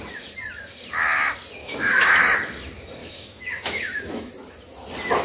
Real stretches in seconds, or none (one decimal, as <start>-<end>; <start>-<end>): 0.0-1.6; 2.1-3.0; 4.3-5.2